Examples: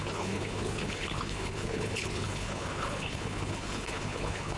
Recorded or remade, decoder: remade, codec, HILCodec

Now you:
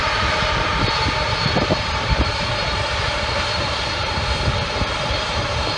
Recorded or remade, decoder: remade, vocoder, BigVGAN v2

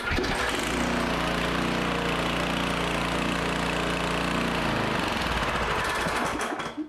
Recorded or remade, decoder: recorded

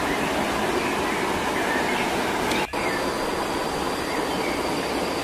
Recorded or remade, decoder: recorded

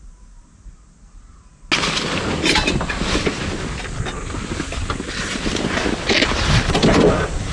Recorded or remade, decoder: recorded